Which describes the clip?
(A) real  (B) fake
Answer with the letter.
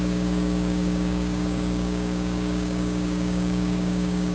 B